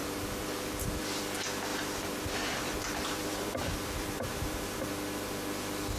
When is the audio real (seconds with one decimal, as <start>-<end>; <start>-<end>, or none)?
1.2-1.7; 5.3-6.0